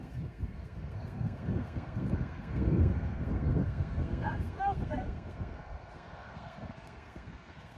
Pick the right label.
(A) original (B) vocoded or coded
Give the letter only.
B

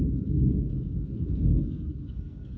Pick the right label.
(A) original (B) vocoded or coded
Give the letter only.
B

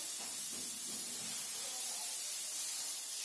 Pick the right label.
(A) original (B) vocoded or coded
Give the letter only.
A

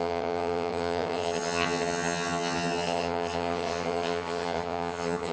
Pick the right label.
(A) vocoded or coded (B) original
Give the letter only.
A